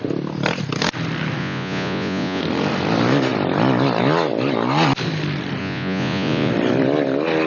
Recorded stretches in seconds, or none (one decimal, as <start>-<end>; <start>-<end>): 0.0-1.4; 2.4-5.6; 6.5-7.5